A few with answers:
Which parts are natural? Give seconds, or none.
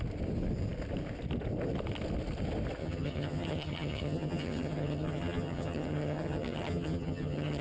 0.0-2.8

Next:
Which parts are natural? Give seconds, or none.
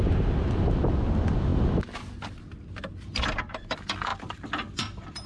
0.0-5.3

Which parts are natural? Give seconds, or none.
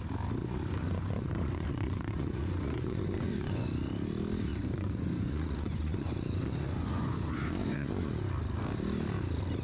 0.0-0.4; 3.7-4.5; 8.1-9.6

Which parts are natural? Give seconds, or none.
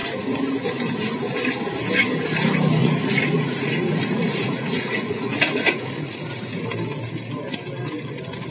0.0-2.8; 6.6-8.5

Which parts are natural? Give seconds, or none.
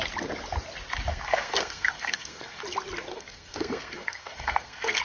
0.0-1.1; 2.6-3.1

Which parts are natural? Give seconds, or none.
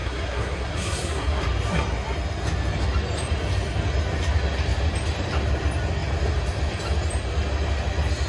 1.4-8.3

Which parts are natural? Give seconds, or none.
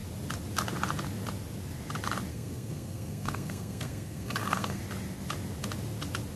0.0-2.3; 4.8-6.4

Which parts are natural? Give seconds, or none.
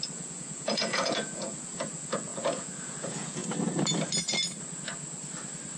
3.4-5.8